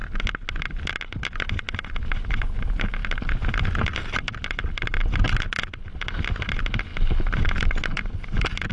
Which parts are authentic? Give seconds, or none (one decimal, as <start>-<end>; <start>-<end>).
0.0-8.7